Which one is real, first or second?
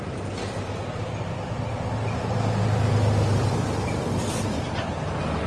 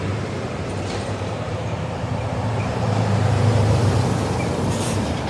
first